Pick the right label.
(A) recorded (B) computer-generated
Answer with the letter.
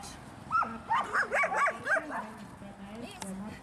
A